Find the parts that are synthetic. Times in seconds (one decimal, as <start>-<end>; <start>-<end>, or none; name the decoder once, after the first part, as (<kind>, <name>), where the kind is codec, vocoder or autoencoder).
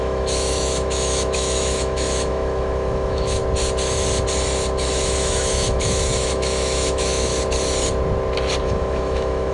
0.0-3.4 (autoencoder, DAC-VAE); 4.9-7.3; 8.6-9.5